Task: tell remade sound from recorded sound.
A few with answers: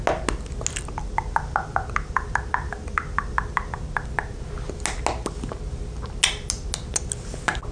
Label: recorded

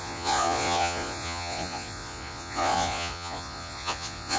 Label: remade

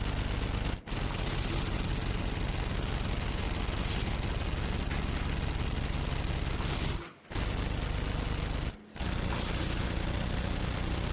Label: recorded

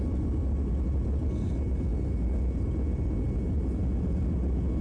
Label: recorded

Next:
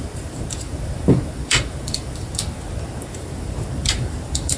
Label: remade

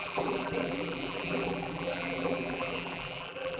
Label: remade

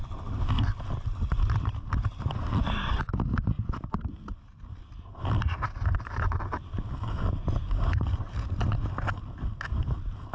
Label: recorded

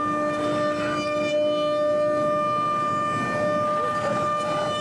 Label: recorded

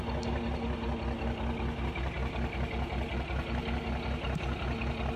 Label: recorded